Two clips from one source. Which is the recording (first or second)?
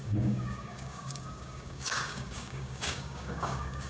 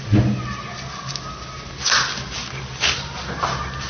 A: second